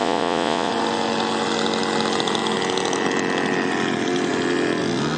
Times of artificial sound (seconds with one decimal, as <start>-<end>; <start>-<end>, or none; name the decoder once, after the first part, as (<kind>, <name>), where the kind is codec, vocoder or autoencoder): 0.0-0.7 (vocoder, Vocos)